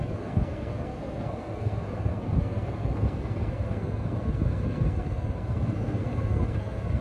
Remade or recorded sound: remade